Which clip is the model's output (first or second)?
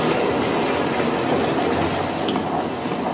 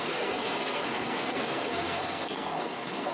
second